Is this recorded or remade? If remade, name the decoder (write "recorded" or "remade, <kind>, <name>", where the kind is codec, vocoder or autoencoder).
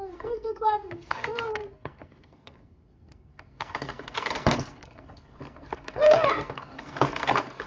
remade, codec, SNAC